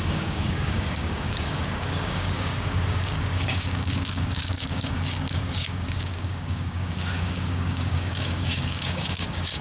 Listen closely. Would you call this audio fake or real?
fake